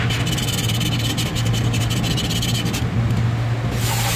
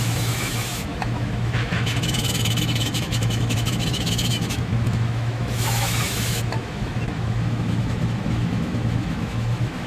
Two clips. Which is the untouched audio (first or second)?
first